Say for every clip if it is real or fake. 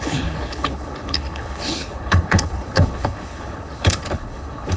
fake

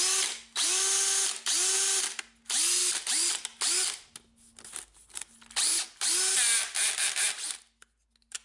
real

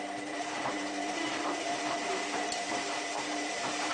fake